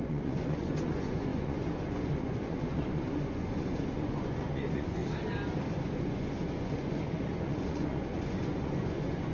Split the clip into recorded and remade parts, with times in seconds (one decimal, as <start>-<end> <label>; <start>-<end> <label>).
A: 0.0-5.0 remade; 5.0-5.7 recorded; 5.7-9.3 remade